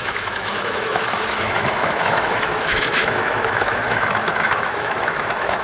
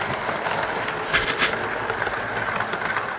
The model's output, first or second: first